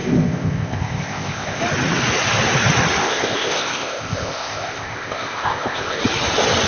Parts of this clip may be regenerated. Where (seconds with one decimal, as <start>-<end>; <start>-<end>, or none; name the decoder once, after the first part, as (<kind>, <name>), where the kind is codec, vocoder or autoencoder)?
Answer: 0.0-1.6 (codec, ZipCodec); 3.0-6.0